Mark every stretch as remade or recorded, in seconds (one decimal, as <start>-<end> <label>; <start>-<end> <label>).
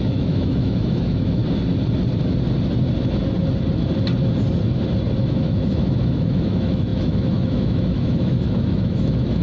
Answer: 0.0-1.4 remade; 1.4-5.2 recorded; 5.2-9.4 remade